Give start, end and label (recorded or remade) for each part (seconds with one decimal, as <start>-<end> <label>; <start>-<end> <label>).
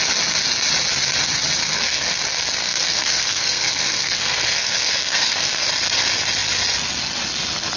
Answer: 0.0-1.6 recorded; 1.6-2.1 remade; 2.1-2.6 recorded; 2.6-5.7 remade; 5.7-7.8 recorded